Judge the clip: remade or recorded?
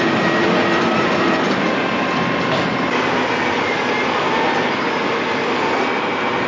recorded